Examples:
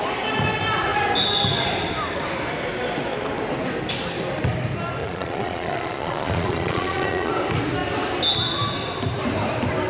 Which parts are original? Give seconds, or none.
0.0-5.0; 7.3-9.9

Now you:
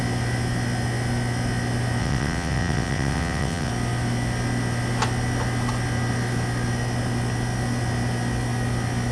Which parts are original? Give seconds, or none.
0.0-2.0; 3.7-9.1

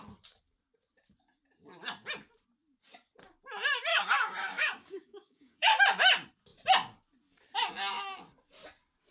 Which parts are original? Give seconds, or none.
0.0-3.9; 5.8-9.1

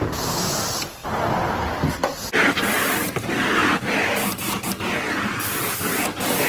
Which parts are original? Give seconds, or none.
0.0-6.5

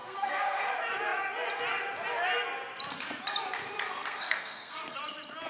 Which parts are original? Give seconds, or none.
0.7-3.9; 5.0-5.5

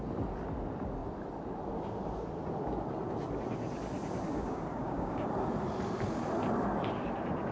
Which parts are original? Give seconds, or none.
0.0-4.3; 5.3-7.5

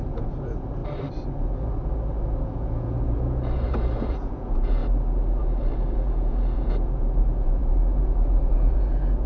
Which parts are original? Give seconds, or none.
0.8-2.2; 4.8-5.4